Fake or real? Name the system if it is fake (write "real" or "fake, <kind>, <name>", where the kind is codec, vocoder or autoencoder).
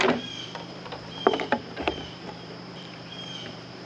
fake, vocoder, BigVGAN v2